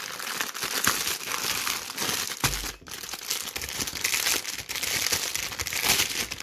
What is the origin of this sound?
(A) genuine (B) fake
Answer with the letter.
A